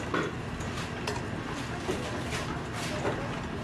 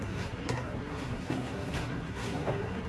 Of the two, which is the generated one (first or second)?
second